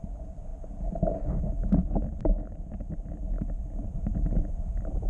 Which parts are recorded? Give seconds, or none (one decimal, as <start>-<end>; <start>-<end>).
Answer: 0.0-5.1